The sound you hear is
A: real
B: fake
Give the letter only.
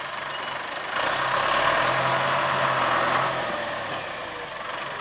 A